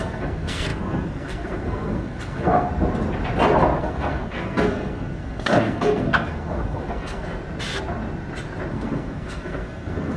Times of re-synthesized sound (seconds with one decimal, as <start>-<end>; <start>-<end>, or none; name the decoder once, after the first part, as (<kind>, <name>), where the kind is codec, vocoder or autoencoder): 0.0-2.7 (codec, SNAC); 3.8-7.4; 8.7-10.2

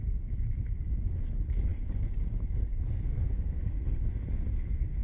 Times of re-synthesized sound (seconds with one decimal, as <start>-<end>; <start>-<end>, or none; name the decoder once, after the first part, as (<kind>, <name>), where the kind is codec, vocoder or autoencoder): 3.1-4.0 (codec, SNAC)

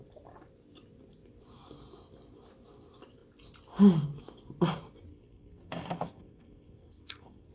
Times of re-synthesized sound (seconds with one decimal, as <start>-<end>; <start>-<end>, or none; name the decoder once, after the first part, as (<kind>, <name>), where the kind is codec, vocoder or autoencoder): 5.1-7.5 (codec, SNAC)

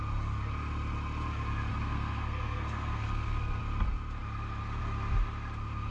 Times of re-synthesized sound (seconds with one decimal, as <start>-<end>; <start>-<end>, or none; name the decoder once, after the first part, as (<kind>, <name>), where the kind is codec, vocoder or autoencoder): 1.7-3.6 (codec, SNAC)

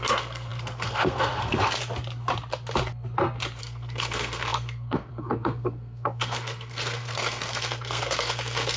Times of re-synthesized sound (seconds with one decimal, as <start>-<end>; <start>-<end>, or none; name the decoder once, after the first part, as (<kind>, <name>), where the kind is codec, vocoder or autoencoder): 0.0-1.8 (codec, SNAC); 3.6-8.8

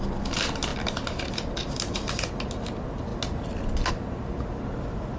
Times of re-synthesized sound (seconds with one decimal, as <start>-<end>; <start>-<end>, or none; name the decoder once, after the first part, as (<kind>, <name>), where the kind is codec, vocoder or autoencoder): none

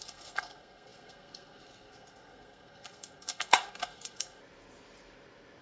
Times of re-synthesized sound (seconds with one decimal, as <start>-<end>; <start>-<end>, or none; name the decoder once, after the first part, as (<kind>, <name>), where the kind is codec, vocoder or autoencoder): 0.0-4.4 (codec, SNAC)